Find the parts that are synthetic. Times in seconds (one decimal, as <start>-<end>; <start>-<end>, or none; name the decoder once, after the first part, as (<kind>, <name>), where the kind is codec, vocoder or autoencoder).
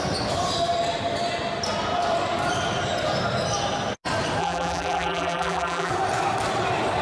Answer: 4.4-5.9 (vocoder, BigVGAN v2)